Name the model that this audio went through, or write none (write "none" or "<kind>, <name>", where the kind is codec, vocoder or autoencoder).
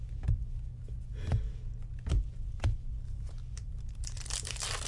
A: none